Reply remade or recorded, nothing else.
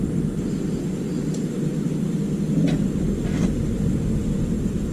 recorded